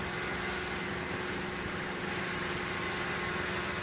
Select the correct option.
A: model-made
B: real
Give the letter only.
B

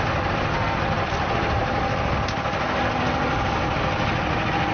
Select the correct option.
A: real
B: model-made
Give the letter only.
A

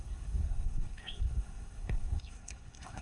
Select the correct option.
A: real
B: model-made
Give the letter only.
B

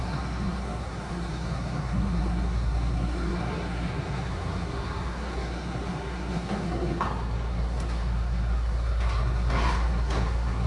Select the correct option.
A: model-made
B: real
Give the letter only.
A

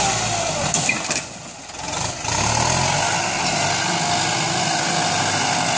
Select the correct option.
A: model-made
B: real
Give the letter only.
B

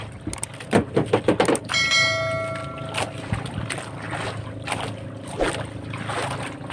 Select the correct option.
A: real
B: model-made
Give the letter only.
A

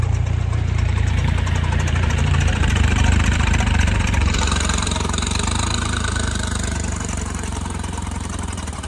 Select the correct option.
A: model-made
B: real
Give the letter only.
A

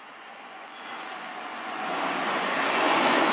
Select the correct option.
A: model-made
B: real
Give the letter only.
A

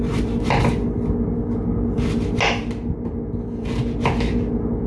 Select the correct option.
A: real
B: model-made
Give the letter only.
A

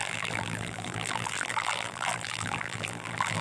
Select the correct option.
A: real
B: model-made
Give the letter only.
B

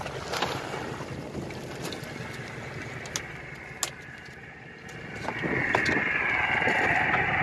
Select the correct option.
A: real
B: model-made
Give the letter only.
A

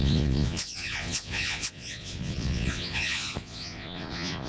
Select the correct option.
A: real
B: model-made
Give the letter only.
B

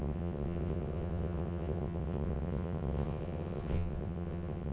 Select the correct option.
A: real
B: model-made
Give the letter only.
B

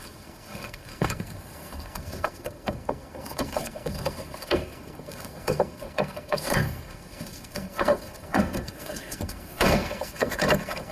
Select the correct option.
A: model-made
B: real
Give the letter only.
A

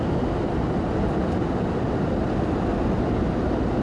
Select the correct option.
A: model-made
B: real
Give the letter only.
B